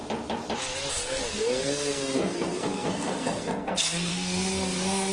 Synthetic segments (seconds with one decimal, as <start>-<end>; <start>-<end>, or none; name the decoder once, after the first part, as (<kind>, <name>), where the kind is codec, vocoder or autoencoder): 0.9-5.1 (codec, SNAC)